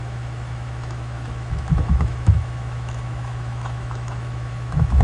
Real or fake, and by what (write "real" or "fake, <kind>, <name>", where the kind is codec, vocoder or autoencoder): fake, autoencoder, DAC-VAE